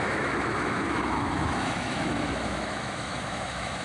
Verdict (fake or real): fake